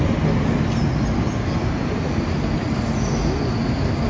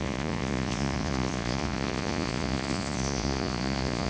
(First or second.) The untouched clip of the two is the first